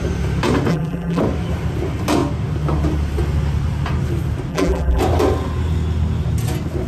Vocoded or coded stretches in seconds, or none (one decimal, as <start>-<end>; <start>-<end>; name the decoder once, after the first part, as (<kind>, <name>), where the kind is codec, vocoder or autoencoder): 0.7-1.2 (vocoder, BigVGAN v2); 4.5-5.0